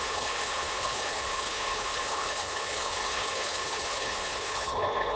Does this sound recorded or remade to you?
remade